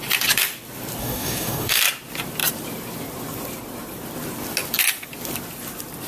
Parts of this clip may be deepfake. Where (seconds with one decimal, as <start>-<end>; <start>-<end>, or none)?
1.0-1.8